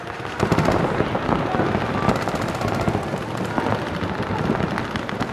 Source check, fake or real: real